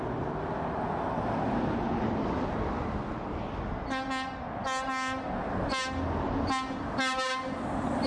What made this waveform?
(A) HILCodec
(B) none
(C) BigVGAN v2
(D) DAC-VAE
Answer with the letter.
B